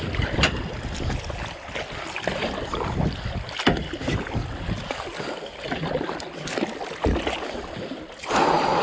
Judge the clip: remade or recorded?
recorded